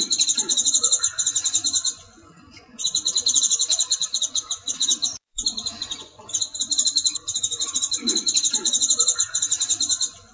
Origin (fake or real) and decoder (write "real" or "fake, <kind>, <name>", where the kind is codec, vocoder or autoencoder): fake, vocoder, Vocos